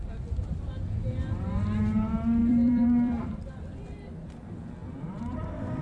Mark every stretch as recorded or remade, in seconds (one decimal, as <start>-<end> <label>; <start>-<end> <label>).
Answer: 0.0-2.4 recorded; 2.4-3.5 remade; 3.5-4.8 recorded; 4.8-5.8 remade